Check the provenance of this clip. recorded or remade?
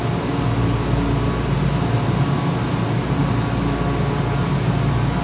recorded